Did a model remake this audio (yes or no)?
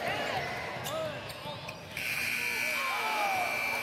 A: no